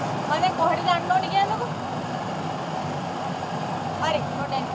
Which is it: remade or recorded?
recorded